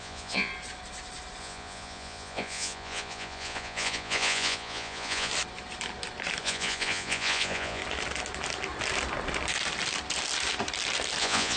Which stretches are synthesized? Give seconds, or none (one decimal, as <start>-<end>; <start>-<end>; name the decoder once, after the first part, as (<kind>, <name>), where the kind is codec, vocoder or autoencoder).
0.0-0.5 (vocoder, Vocos); 1.4-5.3; 6.4-7.8; 11.2-11.6